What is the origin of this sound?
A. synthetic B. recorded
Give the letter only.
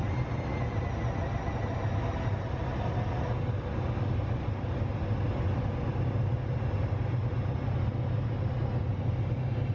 B